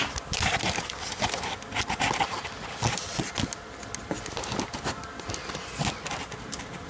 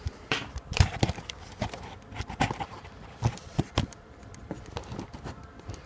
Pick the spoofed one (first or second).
second